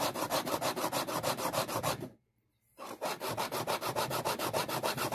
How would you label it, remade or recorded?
remade